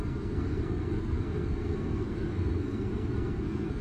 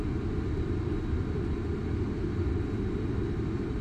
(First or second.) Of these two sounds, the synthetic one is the first